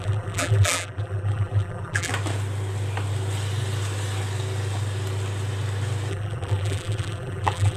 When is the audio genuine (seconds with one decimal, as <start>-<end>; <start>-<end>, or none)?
2.1-6.1